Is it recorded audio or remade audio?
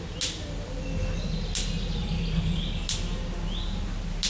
recorded